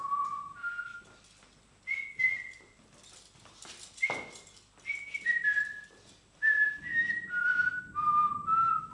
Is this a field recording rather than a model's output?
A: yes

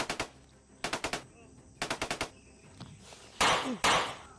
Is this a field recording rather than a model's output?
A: yes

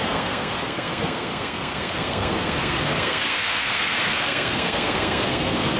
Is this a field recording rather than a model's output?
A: no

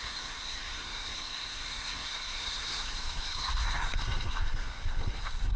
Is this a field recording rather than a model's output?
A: no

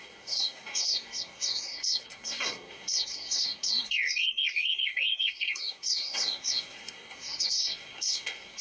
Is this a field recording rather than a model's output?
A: no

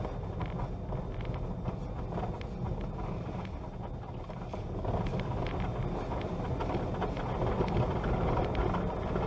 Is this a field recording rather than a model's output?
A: yes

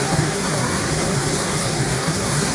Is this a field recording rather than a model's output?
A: no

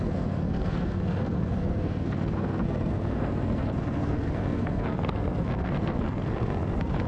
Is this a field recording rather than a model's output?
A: no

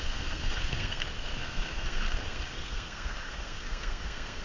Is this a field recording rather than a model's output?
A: no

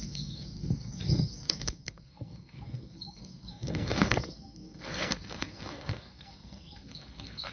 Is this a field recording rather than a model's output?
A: no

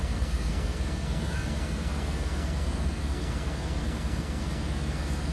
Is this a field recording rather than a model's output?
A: no